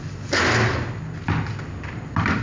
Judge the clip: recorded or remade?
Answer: recorded